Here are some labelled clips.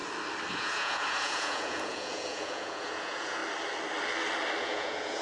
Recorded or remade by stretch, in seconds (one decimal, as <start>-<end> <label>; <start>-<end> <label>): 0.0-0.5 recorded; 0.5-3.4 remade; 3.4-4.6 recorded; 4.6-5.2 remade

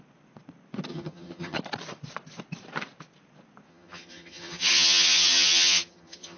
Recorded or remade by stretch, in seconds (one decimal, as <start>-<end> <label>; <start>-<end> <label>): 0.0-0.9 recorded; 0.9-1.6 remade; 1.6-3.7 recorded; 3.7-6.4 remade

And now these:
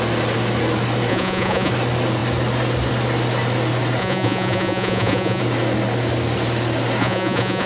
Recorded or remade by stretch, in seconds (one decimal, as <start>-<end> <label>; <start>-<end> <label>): 0.0-1.1 recorded; 1.1-1.7 remade; 1.7-4.0 recorded; 4.0-5.4 remade; 5.4-7.0 recorded; 7.0-7.7 remade

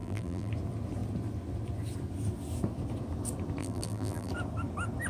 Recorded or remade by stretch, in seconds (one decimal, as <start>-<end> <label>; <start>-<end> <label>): 0.0-0.5 remade; 0.5-3.6 recorded; 3.6-4.3 remade; 4.3-5.1 recorded

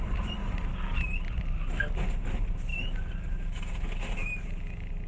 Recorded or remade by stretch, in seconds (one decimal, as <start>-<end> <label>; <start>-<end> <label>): 0.0-5.1 recorded

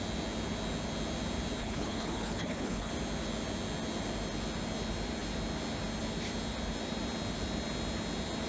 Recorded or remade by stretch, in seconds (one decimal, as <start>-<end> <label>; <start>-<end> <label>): 0.0-1.6 recorded; 1.6-2.9 remade; 2.9-8.5 recorded